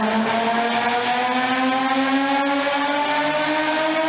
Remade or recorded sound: recorded